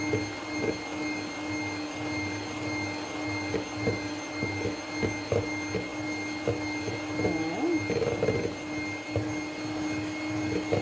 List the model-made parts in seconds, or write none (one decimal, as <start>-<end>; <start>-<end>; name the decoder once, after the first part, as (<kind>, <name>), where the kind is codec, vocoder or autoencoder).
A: none